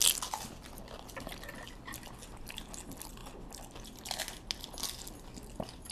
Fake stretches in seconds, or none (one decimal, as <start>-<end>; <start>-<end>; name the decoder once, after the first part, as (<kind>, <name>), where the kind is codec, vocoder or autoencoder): none